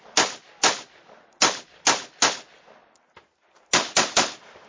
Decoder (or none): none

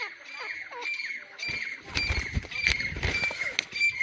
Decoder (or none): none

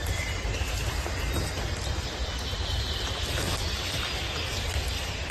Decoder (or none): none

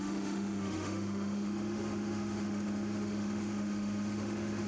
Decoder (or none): autoencoder, DAC-VAE